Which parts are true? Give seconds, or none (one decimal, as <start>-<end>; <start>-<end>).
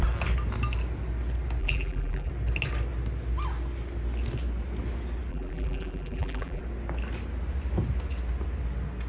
0.0-1.6; 2.3-5.3; 6.6-9.1